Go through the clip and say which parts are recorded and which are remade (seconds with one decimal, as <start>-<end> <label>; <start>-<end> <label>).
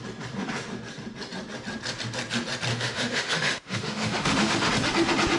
0.0-2.7 recorded; 2.7-4.7 remade; 4.7-5.4 recorded